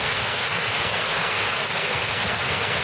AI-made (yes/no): yes